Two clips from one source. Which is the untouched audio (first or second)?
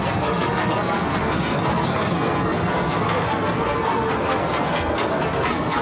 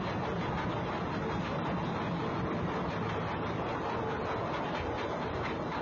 second